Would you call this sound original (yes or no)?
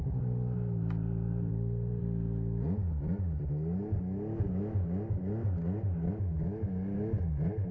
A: yes